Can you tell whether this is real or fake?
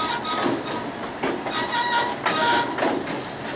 real